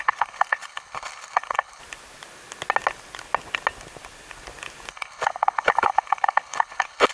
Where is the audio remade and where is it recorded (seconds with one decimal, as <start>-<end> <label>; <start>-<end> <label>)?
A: 0.0-1.8 remade; 1.8-4.9 recorded; 4.9-7.1 remade